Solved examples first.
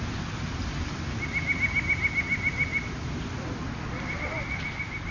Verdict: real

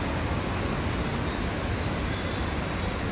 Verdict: real